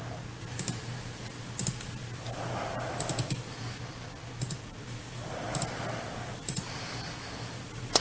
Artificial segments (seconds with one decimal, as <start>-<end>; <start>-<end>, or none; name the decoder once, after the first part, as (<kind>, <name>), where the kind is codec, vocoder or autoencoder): none